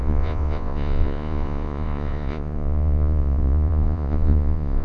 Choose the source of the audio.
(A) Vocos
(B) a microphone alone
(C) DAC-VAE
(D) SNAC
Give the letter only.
A